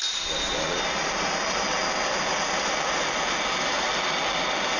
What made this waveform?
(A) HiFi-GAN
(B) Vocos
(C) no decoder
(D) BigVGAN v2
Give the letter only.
C